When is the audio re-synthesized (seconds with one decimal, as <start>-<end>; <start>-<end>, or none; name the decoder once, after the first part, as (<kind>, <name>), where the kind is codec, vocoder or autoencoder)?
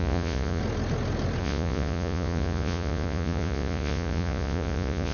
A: 0.0-0.6 (vocoder, Vocos); 1.4-5.1